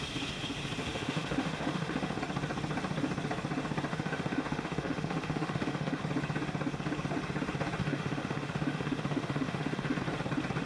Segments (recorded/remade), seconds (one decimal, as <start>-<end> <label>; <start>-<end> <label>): 0.0-0.8 recorded; 0.8-2.2 remade; 2.2-3.9 recorded; 3.9-6.0 remade; 6.0-7.8 recorded; 7.8-10.0 remade; 10.0-10.7 recorded